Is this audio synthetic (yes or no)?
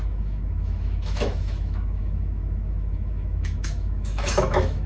yes